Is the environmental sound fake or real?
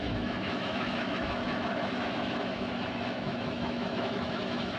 fake